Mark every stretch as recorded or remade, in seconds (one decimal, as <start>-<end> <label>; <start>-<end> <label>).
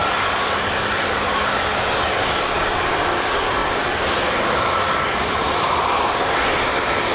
0.0-5.1 recorded; 5.1-6.3 remade; 6.3-7.1 recorded